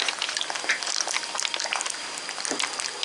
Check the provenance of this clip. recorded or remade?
recorded